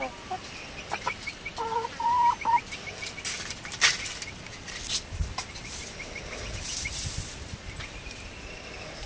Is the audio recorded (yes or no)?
yes